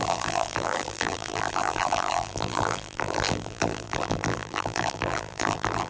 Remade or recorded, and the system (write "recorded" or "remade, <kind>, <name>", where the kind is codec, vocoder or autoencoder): remade, vocoder, BigVGAN v2